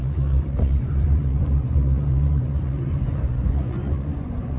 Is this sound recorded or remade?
remade